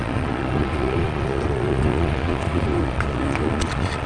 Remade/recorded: remade